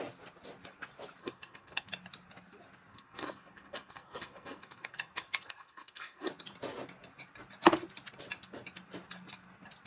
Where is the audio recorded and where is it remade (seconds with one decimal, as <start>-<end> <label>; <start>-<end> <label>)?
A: 0.0-1.2 recorded; 1.2-1.9 remade; 1.9-2.9 recorded; 2.9-6.3 remade; 6.3-9.9 recorded